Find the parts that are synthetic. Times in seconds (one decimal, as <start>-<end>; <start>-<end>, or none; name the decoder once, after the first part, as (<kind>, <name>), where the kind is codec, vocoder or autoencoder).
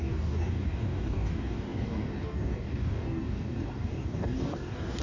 0.0-5.0 (codec, DAC)